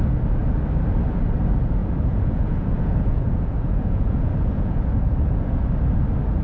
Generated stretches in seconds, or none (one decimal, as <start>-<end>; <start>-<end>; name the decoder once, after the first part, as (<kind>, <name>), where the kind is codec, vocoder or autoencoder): 1.8-5.6 (vocoder, Vocos)